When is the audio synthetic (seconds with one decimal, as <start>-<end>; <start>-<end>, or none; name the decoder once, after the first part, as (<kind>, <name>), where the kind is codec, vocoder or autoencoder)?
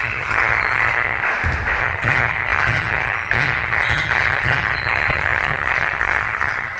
0.0-1.2 (vocoder, HiFi-GAN); 1.8-6.8